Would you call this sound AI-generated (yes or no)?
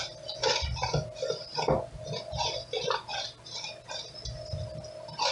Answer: no